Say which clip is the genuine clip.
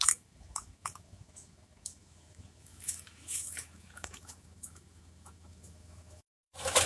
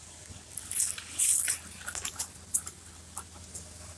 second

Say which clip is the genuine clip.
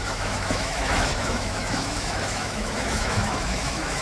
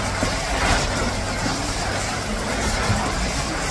second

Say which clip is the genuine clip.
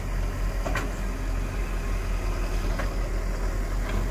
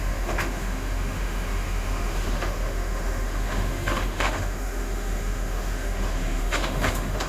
first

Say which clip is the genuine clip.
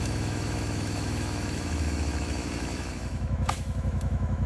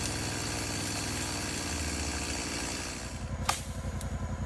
second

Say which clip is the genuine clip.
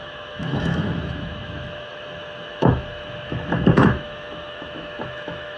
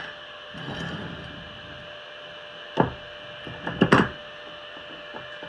second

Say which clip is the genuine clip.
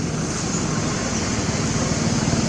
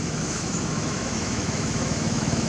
first